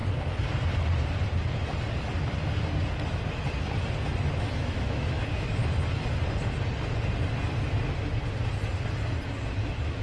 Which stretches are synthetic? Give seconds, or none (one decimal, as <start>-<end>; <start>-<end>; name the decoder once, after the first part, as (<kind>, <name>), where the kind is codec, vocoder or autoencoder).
4.3-5.6 (autoencoder, DAC-VAE); 9.6-10.0